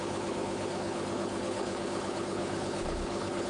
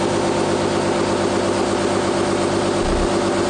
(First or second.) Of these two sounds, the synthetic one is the first